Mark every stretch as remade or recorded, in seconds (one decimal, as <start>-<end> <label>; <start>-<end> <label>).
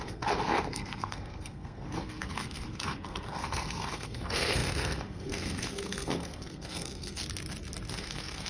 0.0-7.2 remade; 7.2-7.9 recorded; 7.9-8.5 remade